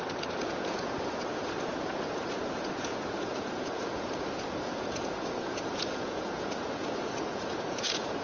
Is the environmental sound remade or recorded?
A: remade